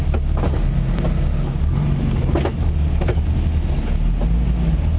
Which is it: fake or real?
real